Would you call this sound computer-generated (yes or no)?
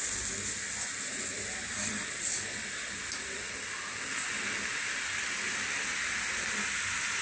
no